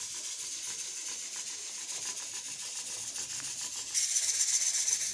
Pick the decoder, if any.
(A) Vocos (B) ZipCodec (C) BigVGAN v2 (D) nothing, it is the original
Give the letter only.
D